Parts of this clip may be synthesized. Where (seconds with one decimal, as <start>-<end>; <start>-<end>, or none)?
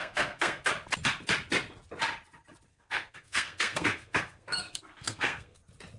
0.0-0.7; 2.7-5.6